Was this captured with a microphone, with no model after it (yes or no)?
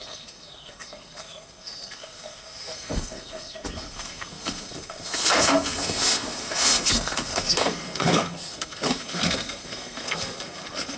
no